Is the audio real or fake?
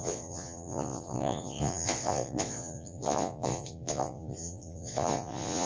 fake